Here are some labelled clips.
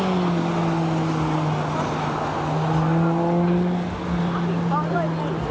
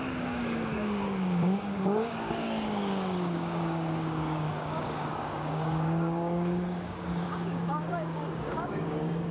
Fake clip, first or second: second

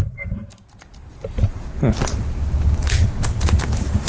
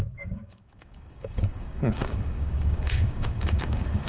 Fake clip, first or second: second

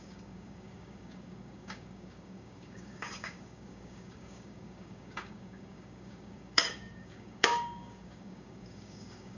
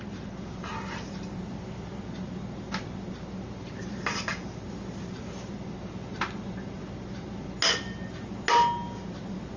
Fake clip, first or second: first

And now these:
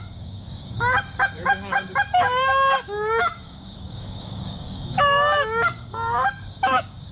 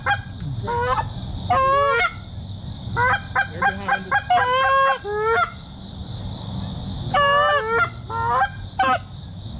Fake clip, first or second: first